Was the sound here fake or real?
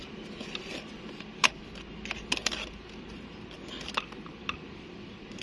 real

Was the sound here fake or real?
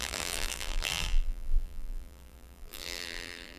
fake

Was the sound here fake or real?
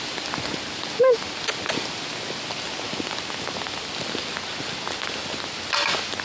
real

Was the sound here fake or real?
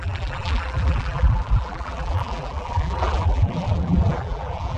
fake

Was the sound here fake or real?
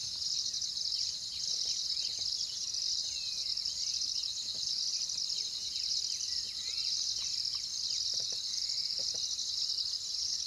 fake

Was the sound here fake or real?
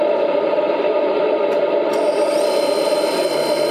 fake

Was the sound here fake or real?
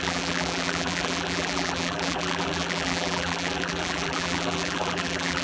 fake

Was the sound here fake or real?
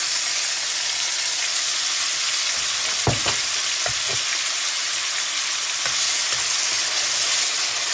real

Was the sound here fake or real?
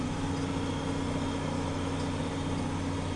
real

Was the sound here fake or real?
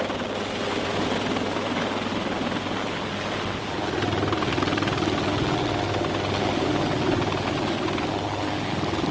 real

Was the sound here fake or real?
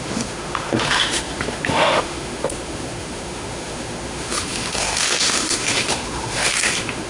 fake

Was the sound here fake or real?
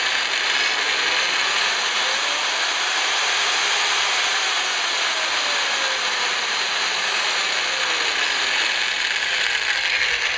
real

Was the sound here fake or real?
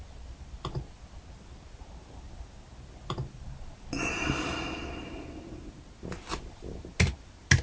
real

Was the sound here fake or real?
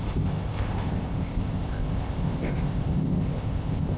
fake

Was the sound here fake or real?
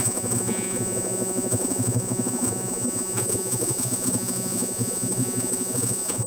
fake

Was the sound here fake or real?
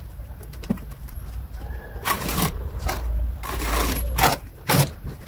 fake